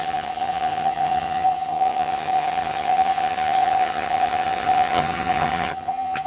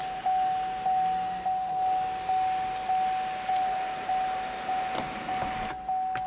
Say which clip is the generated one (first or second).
first